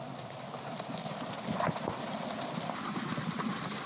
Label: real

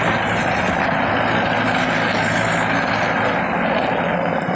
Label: real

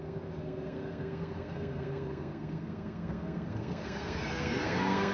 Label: fake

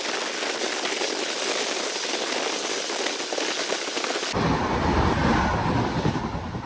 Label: real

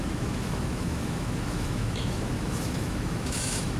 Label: fake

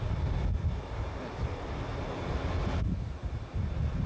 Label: real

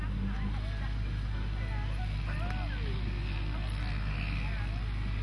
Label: real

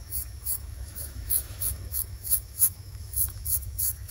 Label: fake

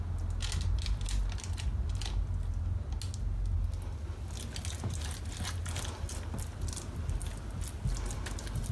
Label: real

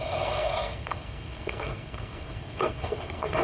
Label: fake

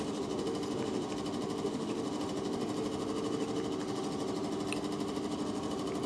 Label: real